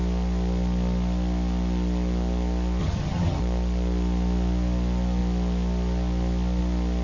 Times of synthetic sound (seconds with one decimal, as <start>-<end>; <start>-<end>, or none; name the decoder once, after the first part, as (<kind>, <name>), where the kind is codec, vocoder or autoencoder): 2.8-3.4 (vocoder, HiFi-GAN)